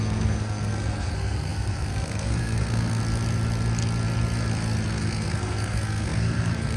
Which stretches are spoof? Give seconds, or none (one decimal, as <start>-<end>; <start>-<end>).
0.0-3.0; 4.9-6.8